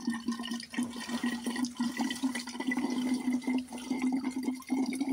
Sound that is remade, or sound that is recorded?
recorded